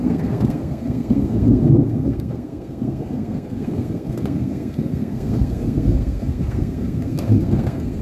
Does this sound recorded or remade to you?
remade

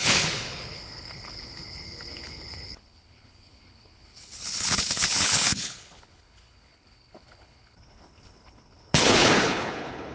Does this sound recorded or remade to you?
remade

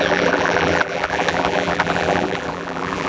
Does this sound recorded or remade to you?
remade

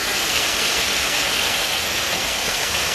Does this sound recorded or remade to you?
remade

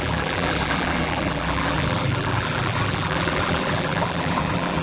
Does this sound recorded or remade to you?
remade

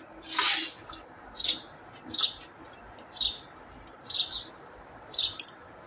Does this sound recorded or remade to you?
remade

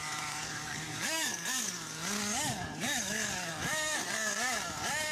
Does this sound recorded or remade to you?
remade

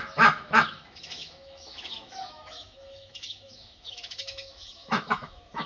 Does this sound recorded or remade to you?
remade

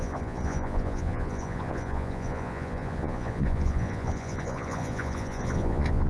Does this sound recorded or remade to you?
remade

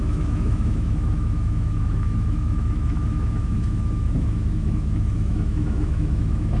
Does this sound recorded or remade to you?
remade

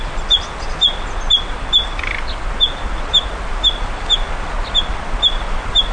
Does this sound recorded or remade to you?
recorded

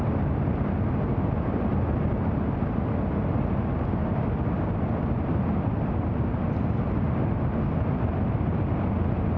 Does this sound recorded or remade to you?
recorded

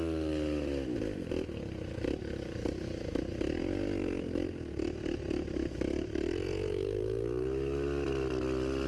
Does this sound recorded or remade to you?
recorded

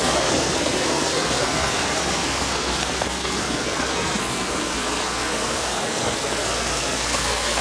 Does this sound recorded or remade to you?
remade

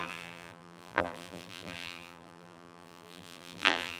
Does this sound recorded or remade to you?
remade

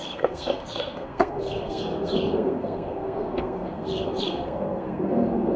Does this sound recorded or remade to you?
remade